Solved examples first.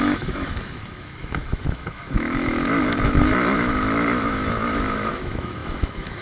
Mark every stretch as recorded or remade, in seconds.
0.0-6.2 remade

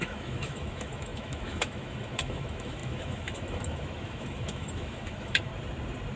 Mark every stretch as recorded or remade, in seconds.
0.0-5.5 remade; 5.5-6.2 recorded

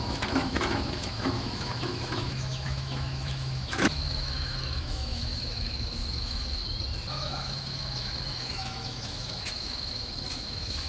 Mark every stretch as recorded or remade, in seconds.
0.0-6.6 remade; 6.6-7.1 recorded; 7.1-10.9 remade

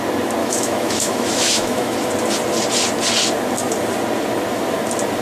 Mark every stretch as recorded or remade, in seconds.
0.0-0.4 recorded; 0.4-2.1 remade; 2.1-5.2 recorded

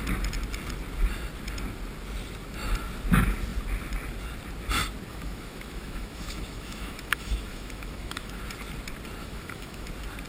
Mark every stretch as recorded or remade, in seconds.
0.0-5.1 recorded; 5.1-8.4 remade; 8.4-9.2 recorded; 9.2-9.9 remade; 9.9-10.3 recorded

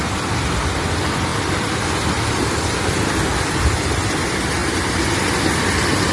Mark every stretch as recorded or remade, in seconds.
0.0-6.1 recorded